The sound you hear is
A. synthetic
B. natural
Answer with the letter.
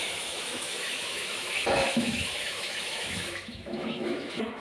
A